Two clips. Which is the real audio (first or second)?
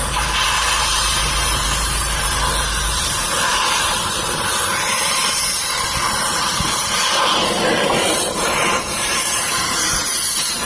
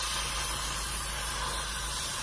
second